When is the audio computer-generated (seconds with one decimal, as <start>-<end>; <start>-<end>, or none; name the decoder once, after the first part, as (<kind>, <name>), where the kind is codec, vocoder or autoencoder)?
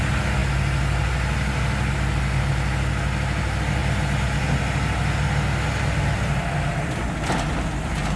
none